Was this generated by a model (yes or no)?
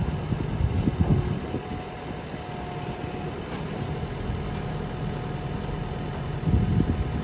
no